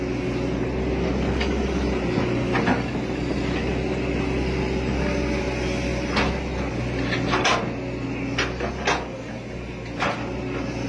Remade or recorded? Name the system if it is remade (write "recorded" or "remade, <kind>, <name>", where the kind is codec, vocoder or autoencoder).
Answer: recorded